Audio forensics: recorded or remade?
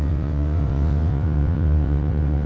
remade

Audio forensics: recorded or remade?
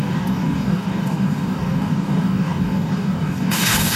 remade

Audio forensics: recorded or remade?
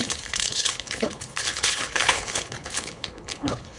remade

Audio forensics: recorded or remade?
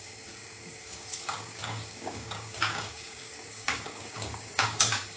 remade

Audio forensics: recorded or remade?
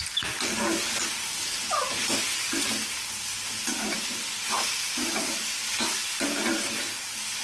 recorded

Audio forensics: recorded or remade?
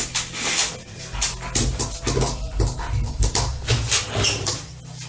recorded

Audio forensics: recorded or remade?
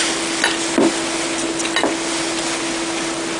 recorded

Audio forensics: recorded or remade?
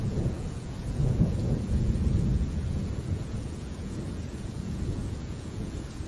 remade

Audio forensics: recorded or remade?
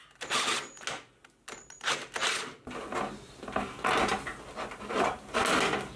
recorded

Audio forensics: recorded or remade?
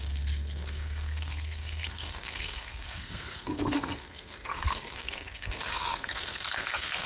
remade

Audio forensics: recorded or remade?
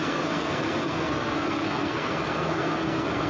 remade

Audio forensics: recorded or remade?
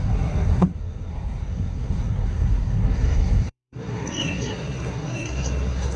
remade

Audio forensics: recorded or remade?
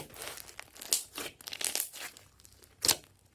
recorded